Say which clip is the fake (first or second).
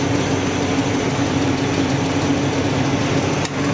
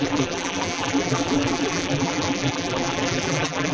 second